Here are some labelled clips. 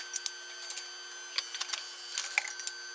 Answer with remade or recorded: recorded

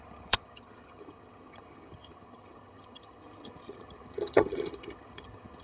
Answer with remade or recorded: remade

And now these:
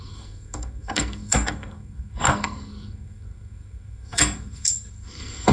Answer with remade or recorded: remade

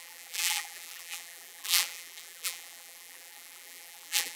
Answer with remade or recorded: remade